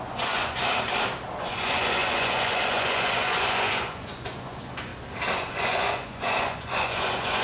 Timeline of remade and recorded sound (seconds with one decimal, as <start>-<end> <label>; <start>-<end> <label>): 0.0-0.7 remade; 0.7-1.4 recorded; 1.4-4.9 remade; 4.9-5.5 recorded; 5.5-7.4 remade